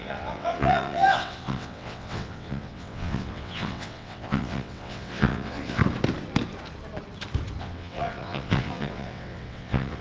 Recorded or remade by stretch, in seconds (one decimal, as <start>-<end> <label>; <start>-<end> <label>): 0.0-5.8 remade; 5.8-7.6 recorded; 7.6-10.0 remade